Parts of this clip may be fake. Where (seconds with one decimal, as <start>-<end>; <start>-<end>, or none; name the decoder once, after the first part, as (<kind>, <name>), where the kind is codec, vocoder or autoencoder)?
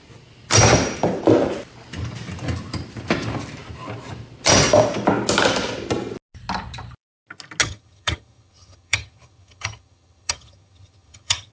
7.6-11.5 (vocoder, HiFi-GAN)